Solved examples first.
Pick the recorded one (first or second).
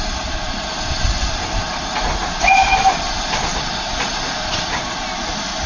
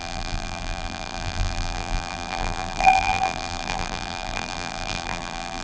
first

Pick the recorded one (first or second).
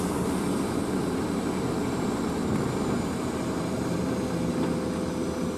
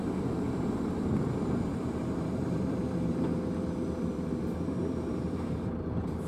first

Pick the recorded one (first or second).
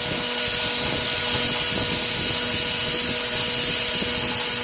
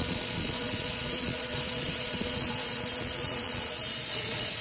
first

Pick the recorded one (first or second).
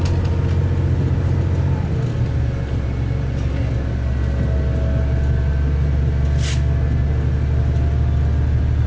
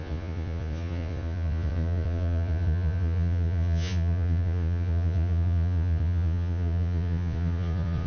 first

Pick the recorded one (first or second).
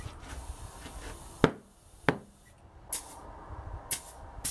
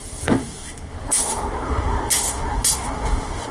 first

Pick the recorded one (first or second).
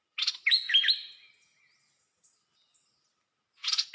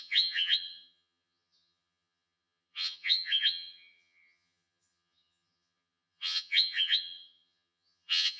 first